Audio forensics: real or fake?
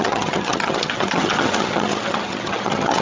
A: fake